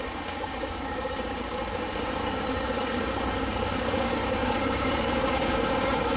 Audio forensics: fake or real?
fake